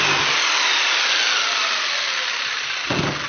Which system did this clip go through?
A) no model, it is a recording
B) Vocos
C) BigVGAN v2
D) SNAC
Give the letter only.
A